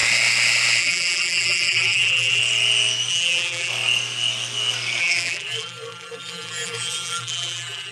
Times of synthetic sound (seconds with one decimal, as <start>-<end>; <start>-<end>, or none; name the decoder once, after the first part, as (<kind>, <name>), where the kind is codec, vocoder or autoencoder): 0.8-2.4 (vocoder, BigVGAN v2); 3.1-3.7; 5.0-7.9